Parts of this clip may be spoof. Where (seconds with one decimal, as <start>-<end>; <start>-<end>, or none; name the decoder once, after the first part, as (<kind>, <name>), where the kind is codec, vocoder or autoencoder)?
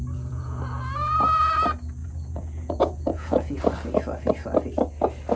0.0-0.6 (vocoder, Vocos); 2.0-3.6